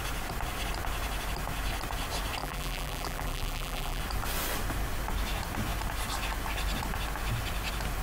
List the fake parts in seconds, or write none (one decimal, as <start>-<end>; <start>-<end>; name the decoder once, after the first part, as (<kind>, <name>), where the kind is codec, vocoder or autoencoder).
2.4-4.0 (vocoder, BigVGAN v2)